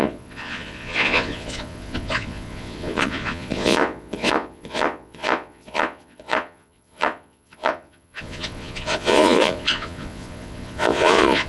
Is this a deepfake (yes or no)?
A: yes